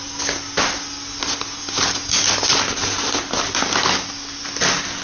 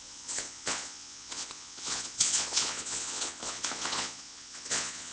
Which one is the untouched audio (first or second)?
first